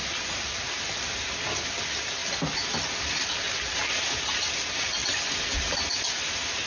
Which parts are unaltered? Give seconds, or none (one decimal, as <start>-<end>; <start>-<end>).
0.0-6.7